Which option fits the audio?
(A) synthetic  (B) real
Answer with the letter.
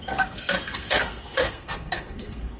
A